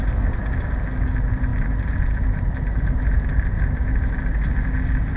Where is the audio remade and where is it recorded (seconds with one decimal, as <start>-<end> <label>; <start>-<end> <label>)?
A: 0.0-1.5 recorded; 1.5-4.1 remade; 4.1-5.2 recorded